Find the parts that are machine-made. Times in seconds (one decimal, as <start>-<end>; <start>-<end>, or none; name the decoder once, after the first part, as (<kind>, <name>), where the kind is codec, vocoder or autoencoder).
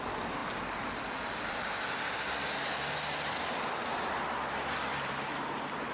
4.9-5.9 (vocoder, BigVGAN v2)